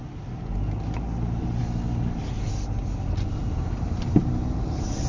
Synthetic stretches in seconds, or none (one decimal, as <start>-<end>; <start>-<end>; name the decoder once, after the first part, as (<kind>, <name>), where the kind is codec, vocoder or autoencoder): none